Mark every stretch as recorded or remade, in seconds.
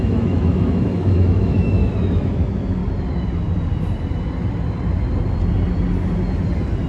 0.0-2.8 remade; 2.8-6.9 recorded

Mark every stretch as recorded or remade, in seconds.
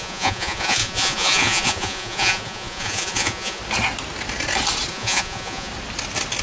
0.0-3.6 remade; 3.6-4.9 recorded; 4.9-5.7 remade; 5.7-6.4 recorded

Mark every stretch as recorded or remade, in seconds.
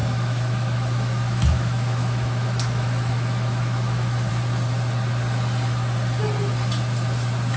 0.0-4.3 remade; 4.3-7.6 recorded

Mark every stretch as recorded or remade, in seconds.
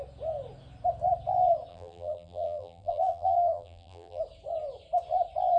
0.0-1.7 recorded; 1.7-4.2 remade; 4.2-5.6 recorded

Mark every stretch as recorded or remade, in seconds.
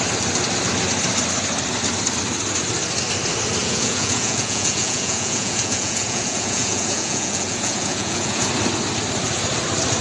0.0-3.6 recorded; 3.6-8.5 remade; 8.5-10.0 recorded